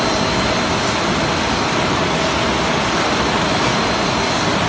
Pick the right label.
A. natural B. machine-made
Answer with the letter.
A